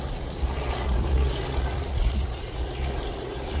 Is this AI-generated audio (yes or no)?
yes